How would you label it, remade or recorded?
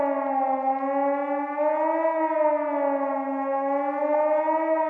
recorded